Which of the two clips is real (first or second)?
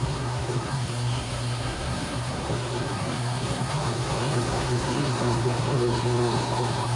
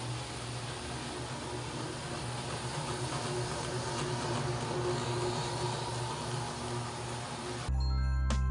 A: second